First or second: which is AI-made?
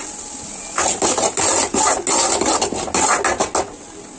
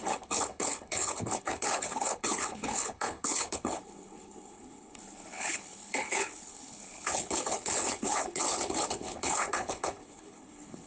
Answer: second